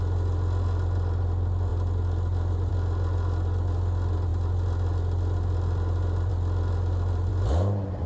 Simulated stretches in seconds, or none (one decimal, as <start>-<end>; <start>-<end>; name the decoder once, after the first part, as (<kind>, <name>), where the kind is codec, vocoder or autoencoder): none